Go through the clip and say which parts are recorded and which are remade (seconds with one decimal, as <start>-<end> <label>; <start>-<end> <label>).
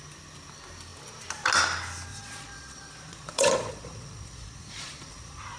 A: 0.0-2.1 recorded; 2.1-5.6 remade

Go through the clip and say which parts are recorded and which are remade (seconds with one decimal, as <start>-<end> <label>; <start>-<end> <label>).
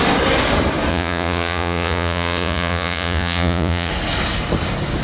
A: 0.0-0.9 recorded; 0.9-3.9 remade; 3.9-5.0 recorded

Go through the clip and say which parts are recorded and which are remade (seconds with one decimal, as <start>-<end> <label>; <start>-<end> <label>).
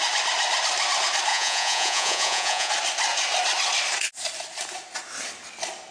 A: 0.0-1.3 recorded; 1.3-2.7 remade; 2.7-5.9 recorded